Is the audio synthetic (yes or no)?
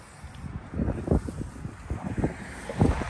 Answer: no